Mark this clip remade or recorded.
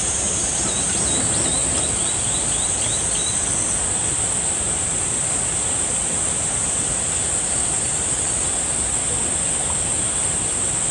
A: recorded